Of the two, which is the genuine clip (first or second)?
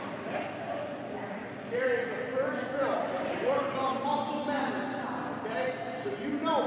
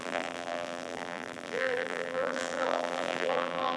first